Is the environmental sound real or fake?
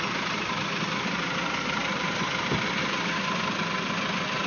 fake